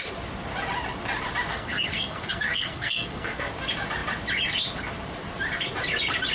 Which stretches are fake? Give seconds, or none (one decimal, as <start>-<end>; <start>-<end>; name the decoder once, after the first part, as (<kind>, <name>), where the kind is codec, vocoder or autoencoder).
1.5-3.5 (codec, SNAC)